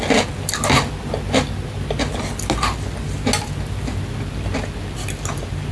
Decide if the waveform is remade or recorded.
recorded